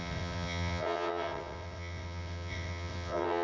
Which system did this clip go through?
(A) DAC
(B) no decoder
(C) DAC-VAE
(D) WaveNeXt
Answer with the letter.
D